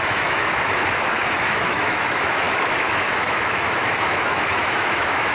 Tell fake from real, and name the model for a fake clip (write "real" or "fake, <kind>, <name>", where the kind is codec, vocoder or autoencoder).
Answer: fake, autoencoder, DAC-VAE